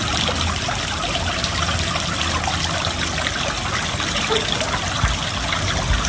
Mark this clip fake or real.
real